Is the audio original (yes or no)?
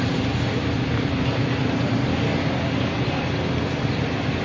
yes